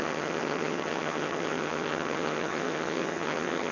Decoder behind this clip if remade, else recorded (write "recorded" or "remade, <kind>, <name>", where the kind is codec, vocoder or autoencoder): remade, vocoder, HiFi-GAN